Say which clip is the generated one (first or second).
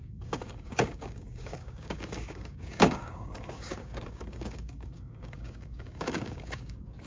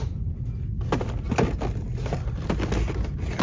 first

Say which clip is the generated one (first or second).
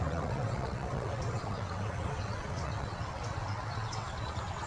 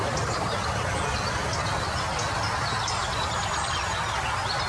first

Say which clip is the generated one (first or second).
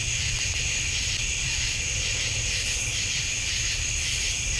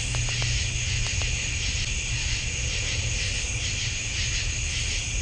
first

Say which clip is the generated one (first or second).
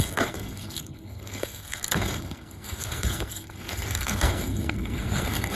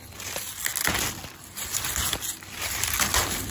first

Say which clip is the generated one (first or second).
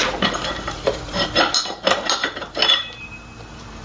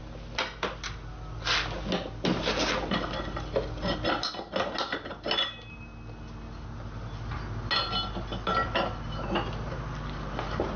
first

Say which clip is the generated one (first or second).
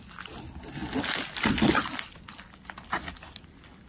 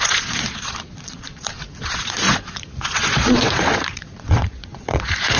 second